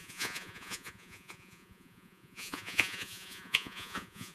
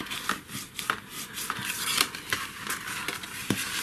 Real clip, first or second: second